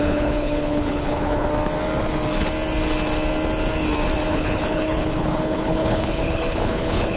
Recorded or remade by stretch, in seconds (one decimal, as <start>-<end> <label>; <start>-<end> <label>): 0.0-1.5 remade; 1.5-4.3 recorded; 4.3-7.2 remade